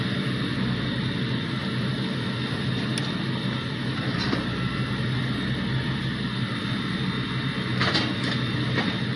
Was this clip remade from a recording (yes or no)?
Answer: no